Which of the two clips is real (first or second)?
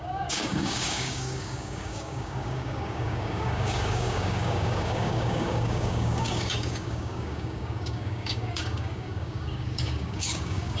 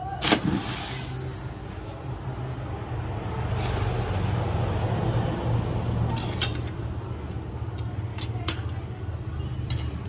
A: second